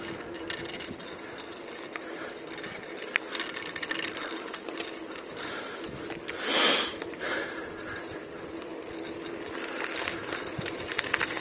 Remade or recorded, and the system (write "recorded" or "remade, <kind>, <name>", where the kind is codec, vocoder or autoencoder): recorded